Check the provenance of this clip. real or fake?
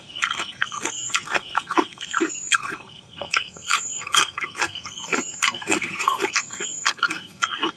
fake